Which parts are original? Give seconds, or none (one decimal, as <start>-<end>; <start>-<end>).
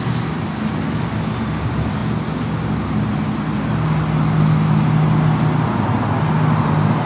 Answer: 0.0-7.1